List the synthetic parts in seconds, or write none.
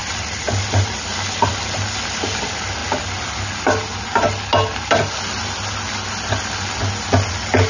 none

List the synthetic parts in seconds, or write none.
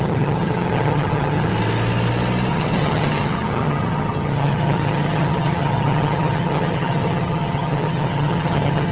0.0-1.5 (vocoder, HiFi-GAN); 2.5-8.9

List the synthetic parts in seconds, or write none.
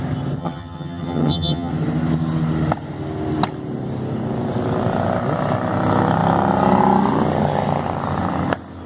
0.4-1.7 (vocoder, HiFi-GAN)